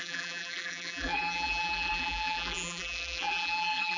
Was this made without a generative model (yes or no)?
no